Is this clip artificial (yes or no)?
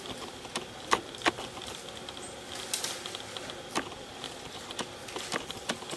no